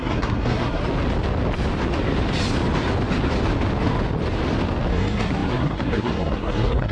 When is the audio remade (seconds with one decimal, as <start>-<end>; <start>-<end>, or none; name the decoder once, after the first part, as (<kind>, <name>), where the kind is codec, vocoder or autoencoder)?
0.0-0.8 (codec, SNAC); 4.9-6.9